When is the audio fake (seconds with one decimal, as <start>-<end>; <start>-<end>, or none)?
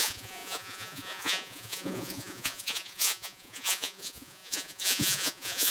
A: 0.0-5.7